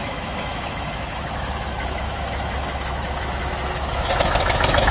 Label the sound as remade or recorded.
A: remade